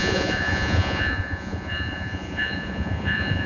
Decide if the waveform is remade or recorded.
remade